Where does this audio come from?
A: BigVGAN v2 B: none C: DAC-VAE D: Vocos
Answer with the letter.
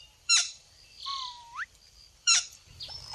A